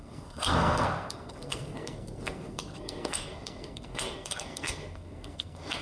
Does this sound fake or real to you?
fake